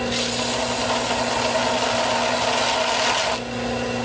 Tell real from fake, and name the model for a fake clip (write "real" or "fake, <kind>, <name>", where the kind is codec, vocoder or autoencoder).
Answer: real